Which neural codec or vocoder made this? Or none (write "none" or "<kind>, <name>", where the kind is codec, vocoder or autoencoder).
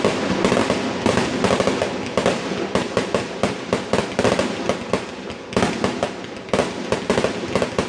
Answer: none